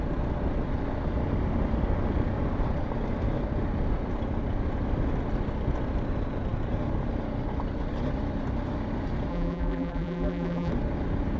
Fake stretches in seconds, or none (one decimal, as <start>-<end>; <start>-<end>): 9.3-10.7